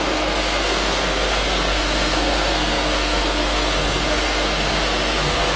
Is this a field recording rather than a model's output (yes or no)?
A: no